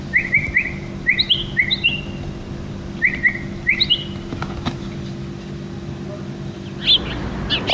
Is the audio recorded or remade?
recorded